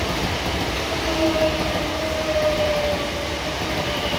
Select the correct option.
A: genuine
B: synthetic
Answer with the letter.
A